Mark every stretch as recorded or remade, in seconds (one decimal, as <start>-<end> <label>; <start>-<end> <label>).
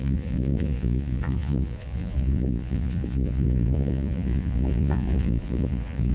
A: 0.0-6.1 remade